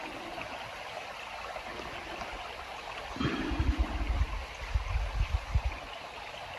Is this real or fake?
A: real